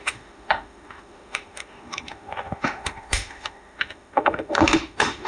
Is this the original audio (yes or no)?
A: no